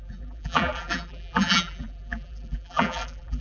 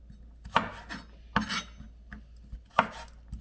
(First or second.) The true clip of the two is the second